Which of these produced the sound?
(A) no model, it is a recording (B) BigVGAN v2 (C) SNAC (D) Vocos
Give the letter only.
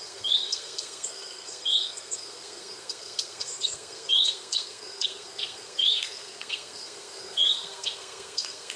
C